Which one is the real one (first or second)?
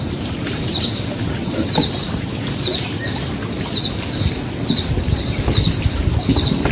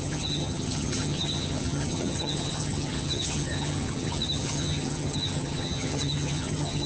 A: first